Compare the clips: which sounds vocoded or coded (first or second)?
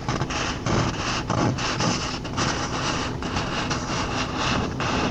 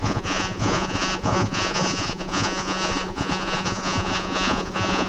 second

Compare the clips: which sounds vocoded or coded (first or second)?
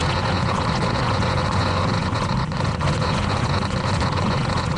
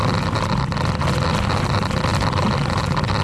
first